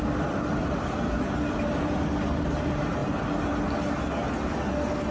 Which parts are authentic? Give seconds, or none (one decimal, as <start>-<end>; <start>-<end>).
0.0-5.1